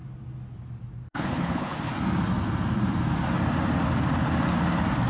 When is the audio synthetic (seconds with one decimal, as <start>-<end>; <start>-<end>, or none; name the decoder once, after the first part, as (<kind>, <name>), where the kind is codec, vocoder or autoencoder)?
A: 1.1-1.9 (codec, HILCodec)